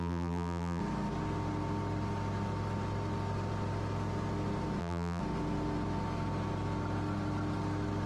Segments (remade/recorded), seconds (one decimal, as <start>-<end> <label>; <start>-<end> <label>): 0.0-0.8 remade; 0.8-4.8 recorded; 4.8-5.2 remade; 5.2-8.1 recorded